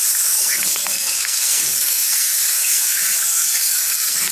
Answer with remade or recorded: remade